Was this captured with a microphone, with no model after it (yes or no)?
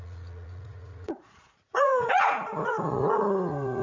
no